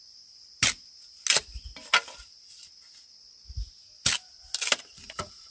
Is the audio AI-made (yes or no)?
no